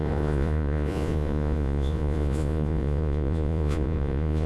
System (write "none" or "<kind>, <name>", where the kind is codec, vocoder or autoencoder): vocoder, Vocos